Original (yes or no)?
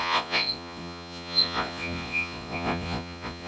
no